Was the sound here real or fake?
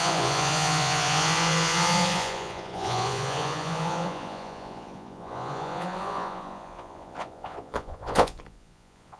fake